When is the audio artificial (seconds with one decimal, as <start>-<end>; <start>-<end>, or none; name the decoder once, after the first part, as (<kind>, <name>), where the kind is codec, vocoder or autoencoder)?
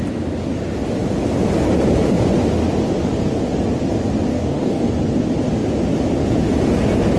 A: 4.3-4.9 (codec, DAC)